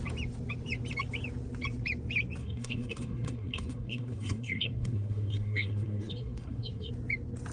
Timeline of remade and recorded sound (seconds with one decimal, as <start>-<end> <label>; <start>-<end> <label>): 0.0-2.4 recorded; 2.4-6.9 remade; 6.9-7.5 recorded